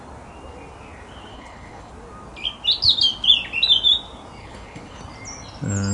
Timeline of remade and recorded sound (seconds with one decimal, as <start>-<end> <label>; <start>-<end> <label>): 0.0-1.3 recorded; 1.3-1.9 remade; 1.9-4.4 recorded; 4.4-5.0 remade; 5.0-5.9 recorded